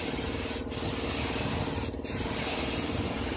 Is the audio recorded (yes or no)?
yes